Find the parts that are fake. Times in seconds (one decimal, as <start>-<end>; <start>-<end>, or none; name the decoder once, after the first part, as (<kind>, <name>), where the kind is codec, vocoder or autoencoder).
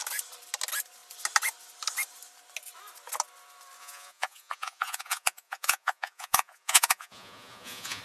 3.8-8.0 (vocoder, Vocos)